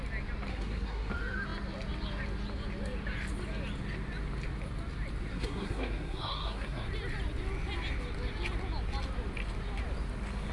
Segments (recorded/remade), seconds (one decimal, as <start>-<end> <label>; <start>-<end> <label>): 0.0-0.5 recorded; 0.5-1.1 remade; 1.1-5.3 recorded; 5.3-6.9 remade; 6.9-10.5 recorded